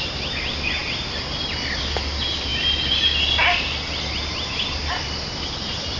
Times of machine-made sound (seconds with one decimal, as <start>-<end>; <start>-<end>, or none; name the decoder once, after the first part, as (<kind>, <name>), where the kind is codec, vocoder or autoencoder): none